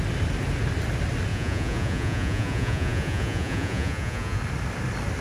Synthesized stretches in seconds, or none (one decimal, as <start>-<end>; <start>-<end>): 1.3-4.4